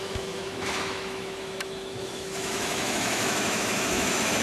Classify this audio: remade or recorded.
remade